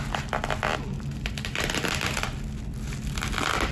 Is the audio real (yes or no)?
yes